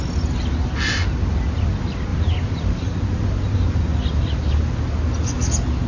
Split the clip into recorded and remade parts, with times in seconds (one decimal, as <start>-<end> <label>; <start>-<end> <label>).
0.0-2.1 recorded; 2.1-2.9 remade; 2.9-5.9 recorded